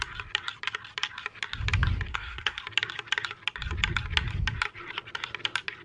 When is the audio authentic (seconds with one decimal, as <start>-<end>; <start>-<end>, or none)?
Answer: 0.0-2.1; 2.6-5.8